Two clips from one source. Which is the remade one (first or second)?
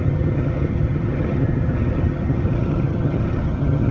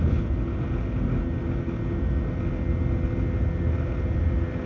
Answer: first